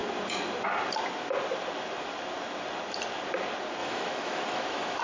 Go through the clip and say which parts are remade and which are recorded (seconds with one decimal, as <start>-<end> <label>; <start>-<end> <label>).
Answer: 0.0-3.8 recorded; 3.8-5.0 remade